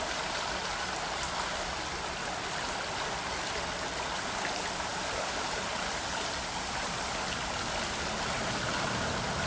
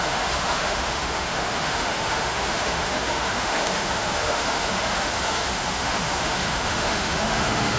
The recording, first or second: first